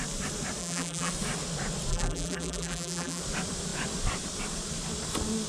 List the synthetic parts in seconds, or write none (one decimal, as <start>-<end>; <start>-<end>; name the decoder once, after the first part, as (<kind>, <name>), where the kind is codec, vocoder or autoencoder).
0.6-1.1 (vocoder, BigVGAN v2); 1.9-3.2